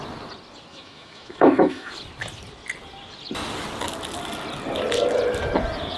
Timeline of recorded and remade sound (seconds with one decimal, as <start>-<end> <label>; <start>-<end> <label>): 0.0-0.7 recorded; 0.7-1.9 remade; 1.9-6.0 recorded